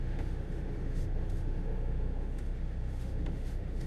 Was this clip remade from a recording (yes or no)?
yes